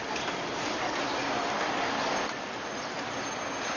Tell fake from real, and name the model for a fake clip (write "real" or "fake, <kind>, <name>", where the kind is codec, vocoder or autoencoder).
real